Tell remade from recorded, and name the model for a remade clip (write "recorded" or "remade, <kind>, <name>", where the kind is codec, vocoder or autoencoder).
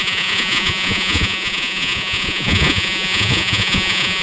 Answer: remade, vocoder, Vocos